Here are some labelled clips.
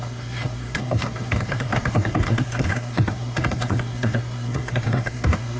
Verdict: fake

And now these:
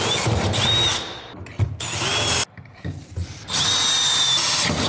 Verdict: real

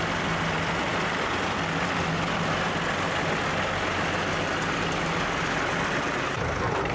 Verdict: real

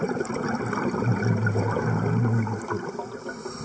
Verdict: real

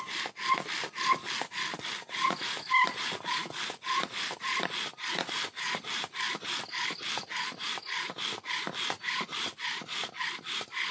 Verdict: real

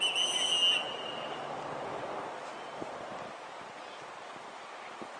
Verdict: real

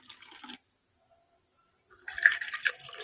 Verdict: real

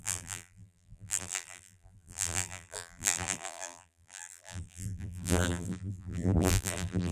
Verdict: fake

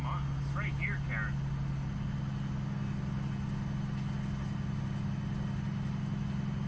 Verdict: real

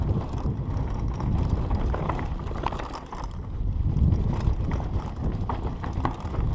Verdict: real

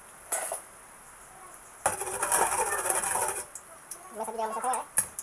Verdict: real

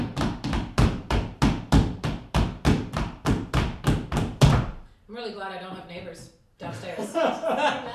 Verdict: real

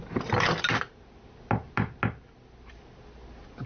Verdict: real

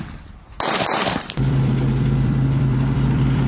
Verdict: fake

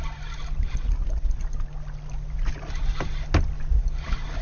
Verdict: real